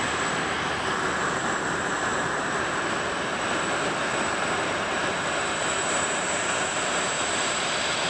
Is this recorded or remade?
remade